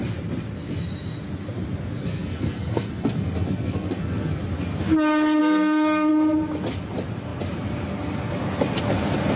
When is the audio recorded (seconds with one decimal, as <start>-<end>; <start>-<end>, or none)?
0.0-2.0; 4.4-5.4; 6.1-9.4